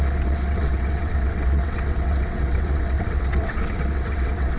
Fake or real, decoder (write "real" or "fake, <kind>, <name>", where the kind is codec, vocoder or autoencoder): fake, vocoder, WaveNeXt